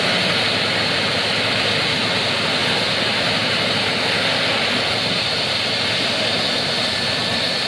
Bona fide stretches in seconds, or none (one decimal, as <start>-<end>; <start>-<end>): 0.0-7.7